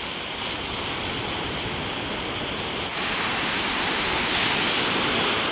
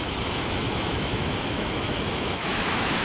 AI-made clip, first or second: second